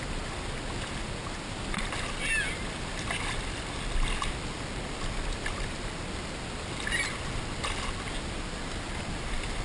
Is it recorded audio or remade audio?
recorded